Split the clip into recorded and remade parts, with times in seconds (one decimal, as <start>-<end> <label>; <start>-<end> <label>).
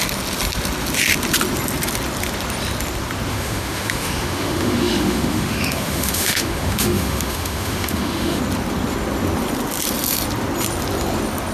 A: 0.0-3.3 recorded; 3.3-8.4 remade; 8.4-11.5 recorded